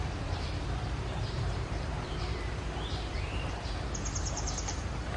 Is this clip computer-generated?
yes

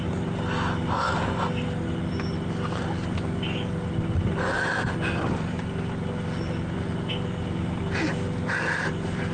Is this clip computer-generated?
no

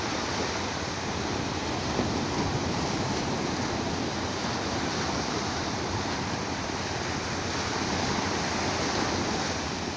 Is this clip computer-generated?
no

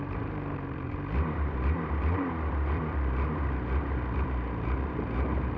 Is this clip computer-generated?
yes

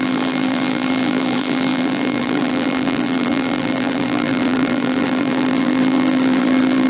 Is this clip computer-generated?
yes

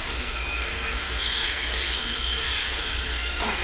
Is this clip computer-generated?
yes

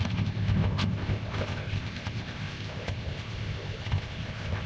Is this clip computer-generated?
yes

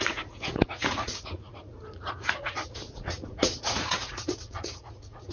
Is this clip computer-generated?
yes